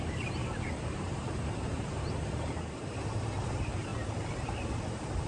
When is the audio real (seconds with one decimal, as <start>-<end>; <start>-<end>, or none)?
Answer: 3.9-5.3